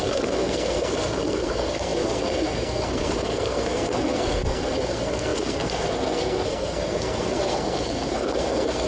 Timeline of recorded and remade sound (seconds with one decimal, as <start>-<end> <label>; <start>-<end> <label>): 0.0-8.9 remade